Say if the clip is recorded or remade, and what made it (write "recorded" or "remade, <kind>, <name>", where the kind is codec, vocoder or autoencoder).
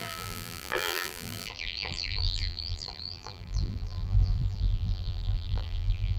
remade, vocoder, BigVGAN v2